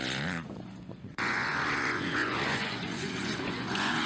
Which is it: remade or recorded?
remade